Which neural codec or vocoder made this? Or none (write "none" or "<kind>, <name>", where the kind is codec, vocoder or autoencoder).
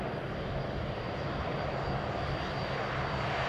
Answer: none